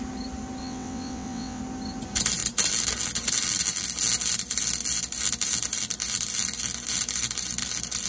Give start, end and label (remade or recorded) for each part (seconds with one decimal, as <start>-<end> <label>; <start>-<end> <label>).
0.0-0.6 recorded; 0.6-1.6 remade; 1.6-8.1 recorded